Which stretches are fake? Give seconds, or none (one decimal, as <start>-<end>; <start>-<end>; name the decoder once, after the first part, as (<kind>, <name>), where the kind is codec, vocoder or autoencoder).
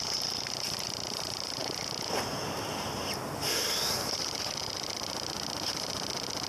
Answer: none